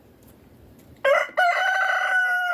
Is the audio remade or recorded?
remade